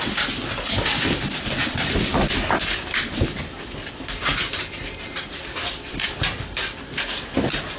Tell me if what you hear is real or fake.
real